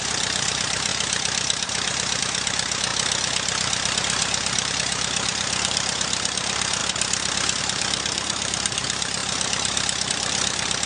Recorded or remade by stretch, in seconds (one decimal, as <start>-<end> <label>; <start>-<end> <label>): 0.0-2.9 remade; 2.9-4.7 recorded; 4.7-6.8 remade; 6.8-7.6 recorded; 7.6-10.9 remade